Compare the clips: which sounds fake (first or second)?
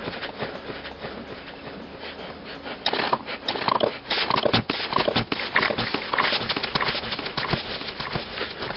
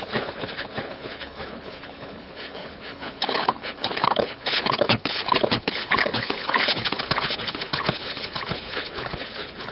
second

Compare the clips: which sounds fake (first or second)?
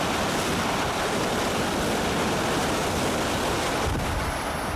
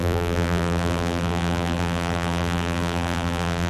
second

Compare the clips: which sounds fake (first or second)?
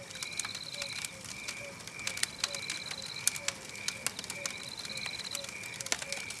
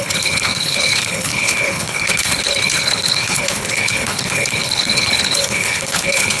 second